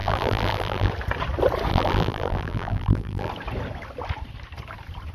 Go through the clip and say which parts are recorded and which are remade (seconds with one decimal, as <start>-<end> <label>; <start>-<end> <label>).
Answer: 0.0-0.9 remade; 0.9-1.7 recorded; 1.7-3.3 remade; 3.3-5.1 recorded